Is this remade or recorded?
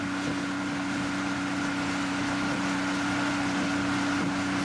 recorded